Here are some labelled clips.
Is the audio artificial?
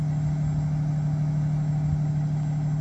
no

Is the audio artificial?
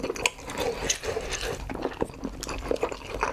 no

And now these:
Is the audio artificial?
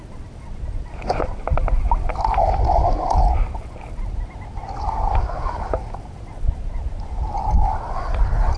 no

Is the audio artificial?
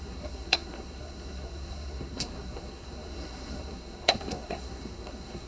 yes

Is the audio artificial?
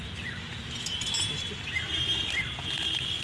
no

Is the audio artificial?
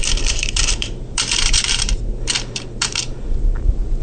yes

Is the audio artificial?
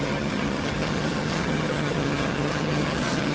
yes